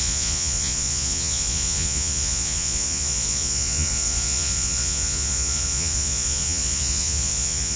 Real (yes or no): no